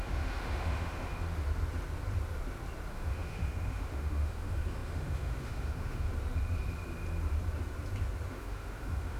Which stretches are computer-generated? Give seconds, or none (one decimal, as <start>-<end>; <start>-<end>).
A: 0.0-1.1; 2.9-6.1; 8.3-9.2